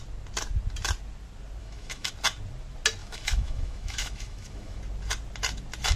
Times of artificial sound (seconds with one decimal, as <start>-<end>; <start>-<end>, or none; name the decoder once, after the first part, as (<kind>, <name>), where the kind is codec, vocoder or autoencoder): 1.6-2.1 (autoencoder, DAC-VAE); 3.0-4.8